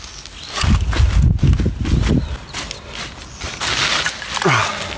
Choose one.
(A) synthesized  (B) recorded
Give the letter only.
B